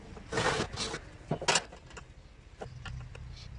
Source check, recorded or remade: recorded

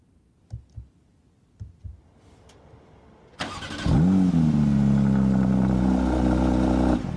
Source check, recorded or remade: recorded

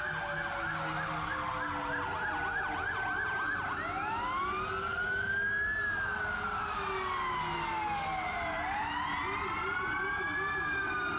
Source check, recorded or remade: recorded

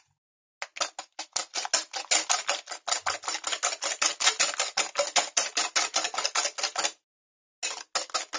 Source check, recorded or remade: recorded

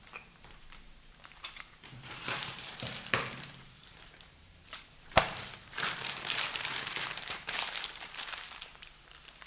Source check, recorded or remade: remade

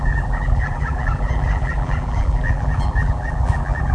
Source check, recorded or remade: remade